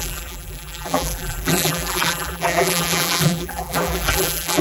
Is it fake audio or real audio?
fake